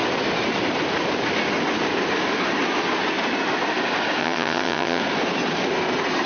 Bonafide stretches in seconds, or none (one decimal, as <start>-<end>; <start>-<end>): 0.0-4.2; 5.0-6.3